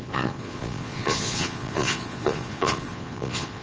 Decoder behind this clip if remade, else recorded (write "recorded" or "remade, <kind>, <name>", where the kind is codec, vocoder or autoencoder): remade, vocoder, Vocos